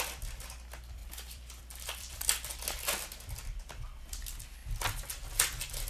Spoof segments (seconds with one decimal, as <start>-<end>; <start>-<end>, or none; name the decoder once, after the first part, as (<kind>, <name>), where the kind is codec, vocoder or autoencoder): 1.0-2.1 (vocoder, BigVGAN v2)